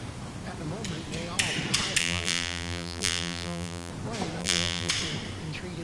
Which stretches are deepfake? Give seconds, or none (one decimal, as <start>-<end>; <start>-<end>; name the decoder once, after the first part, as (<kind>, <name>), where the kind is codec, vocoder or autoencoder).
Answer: 2.0-3.9 (vocoder, BigVGAN v2); 4.4-4.9